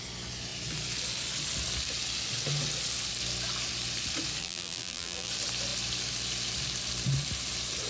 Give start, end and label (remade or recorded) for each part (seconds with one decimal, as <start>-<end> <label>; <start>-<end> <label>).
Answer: 0.0-4.4 recorded; 4.4-5.3 remade; 5.3-7.9 recorded